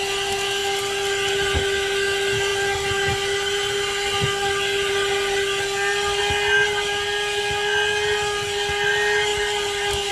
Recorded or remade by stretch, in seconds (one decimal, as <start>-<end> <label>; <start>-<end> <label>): 0.0-10.1 recorded